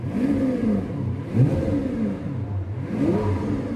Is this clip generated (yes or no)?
no